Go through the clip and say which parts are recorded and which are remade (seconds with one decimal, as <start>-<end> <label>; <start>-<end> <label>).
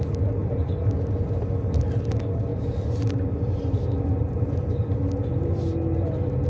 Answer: 0.0-0.4 recorded; 0.4-1.3 remade; 1.3-2.5 recorded; 2.5-5.0 remade; 5.0-6.5 recorded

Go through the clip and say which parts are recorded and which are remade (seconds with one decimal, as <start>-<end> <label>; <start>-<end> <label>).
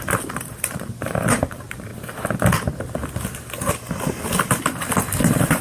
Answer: 0.0-1.9 remade; 1.9-5.6 recorded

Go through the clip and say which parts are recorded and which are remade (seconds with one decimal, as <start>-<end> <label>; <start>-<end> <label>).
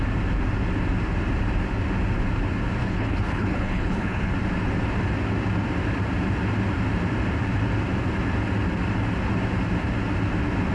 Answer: 0.0-2.8 recorded; 2.8-4.3 remade; 4.3-10.7 recorded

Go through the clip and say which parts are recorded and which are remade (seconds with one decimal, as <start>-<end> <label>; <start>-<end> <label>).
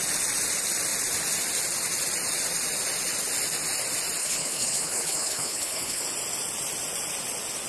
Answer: 0.0-4.2 recorded; 4.2-6.0 remade; 6.0-7.7 recorded